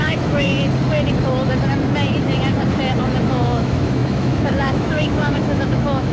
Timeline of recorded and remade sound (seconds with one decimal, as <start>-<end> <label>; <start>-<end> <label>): 0.0-0.5 remade; 0.5-3.3 recorded; 3.3-6.1 remade